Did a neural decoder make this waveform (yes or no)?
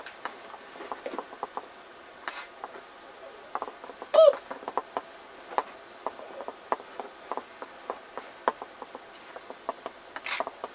no